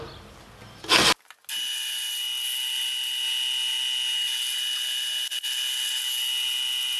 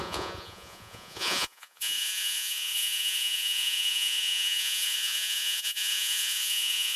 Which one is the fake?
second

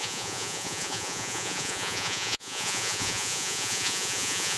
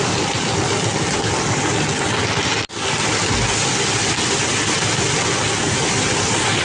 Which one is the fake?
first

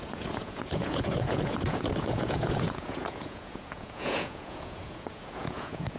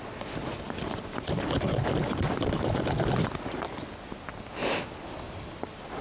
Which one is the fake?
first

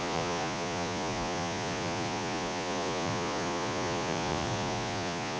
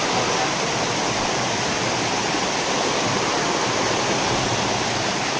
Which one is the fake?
first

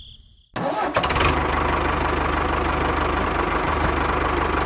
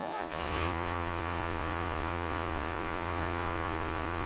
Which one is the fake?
second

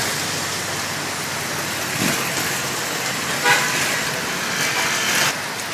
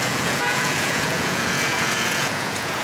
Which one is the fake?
second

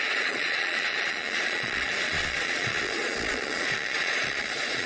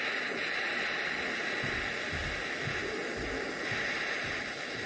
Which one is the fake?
first